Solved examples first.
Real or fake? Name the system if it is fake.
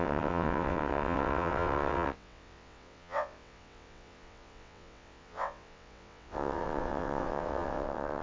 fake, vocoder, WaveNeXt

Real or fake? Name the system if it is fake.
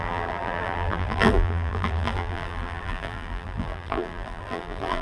fake, vocoder, BigVGAN v2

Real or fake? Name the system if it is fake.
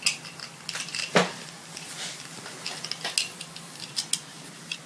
real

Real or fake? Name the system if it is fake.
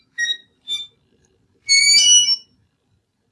real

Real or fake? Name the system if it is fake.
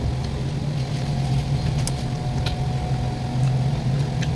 real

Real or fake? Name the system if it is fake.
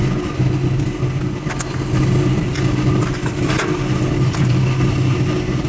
real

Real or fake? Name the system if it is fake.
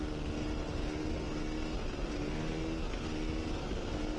real